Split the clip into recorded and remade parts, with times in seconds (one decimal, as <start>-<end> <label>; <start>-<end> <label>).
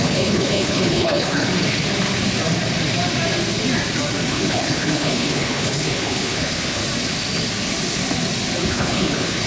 0.0-1.5 remade; 1.5-4.3 recorded; 4.3-6.8 remade; 6.8-8.7 recorded; 8.7-9.5 remade